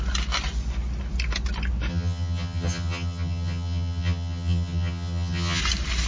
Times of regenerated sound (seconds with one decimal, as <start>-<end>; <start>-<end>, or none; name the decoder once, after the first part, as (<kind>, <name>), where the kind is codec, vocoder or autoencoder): 1.9-5.6 (vocoder, HiFi-GAN)